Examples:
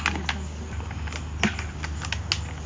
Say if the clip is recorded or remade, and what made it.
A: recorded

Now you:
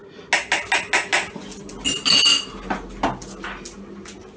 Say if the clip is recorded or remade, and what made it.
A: recorded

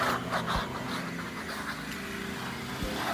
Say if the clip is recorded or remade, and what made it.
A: recorded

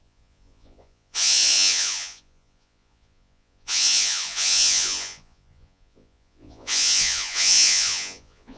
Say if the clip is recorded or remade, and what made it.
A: remade, vocoder, Vocos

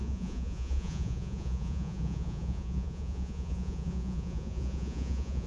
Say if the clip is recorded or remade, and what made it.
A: remade, vocoder, Vocos